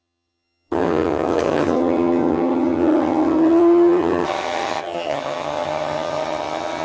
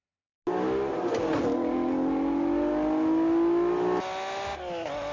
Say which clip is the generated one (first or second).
first